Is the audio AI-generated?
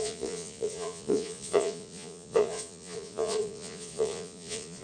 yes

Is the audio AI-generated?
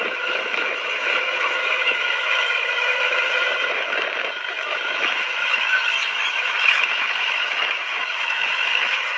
yes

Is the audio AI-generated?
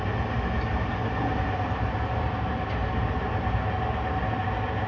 no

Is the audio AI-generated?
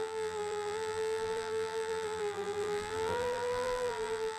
yes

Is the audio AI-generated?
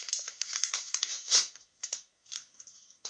yes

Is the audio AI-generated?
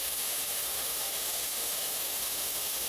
yes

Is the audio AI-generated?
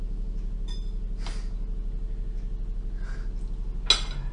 no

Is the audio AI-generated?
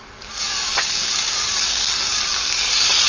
yes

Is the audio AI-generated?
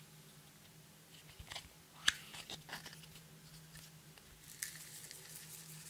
no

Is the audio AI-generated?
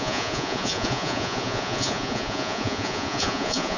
yes